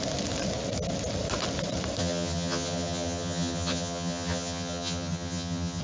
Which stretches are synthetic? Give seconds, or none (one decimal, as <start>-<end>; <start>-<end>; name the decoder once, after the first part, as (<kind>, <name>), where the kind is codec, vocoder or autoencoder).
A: 2.0-5.8 (vocoder, HiFi-GAN)